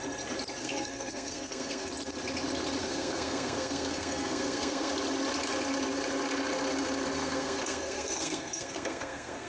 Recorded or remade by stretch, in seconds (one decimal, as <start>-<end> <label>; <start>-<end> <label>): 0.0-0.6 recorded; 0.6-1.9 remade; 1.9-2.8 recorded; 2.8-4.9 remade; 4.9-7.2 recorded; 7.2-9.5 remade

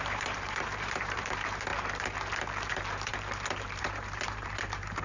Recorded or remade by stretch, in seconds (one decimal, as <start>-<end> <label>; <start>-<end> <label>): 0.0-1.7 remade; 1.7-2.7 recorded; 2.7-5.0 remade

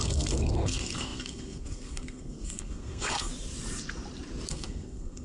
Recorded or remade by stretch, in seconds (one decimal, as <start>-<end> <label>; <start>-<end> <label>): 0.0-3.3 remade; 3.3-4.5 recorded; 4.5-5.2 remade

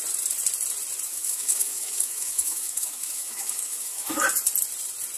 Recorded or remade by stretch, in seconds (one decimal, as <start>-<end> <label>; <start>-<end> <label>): 0.0-1.1 recorded; 1.1-4.2 remade; 4.2-5.2 recorded

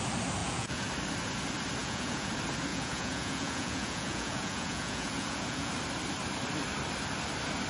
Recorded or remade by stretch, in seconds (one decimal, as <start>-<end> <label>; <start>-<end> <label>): 0.0-0.4 recorded; 0.4-0.9 remade; 0.9-1.8 recorded; 1.8-2.3 remade; 2.3-2.7 recorded; 2.7-5.7 remade; 5.7-7.7 recorded

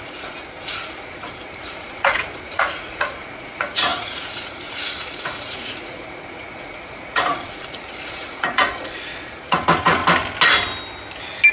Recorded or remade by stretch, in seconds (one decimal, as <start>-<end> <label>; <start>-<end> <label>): 0.0-10.0 remade; 10.0-11.5 recorded